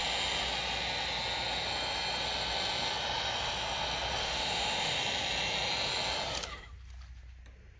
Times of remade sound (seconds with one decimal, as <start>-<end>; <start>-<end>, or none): 4.2-5.0